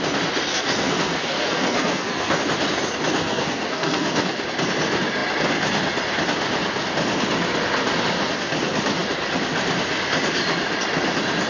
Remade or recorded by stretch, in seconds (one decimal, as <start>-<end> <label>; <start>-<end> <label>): 0.0-0.5 recorded; 0.5-2.4 remade; 2.4-3.2 recorded; 3.2-4.4 remade; 4.4-11.5 recorded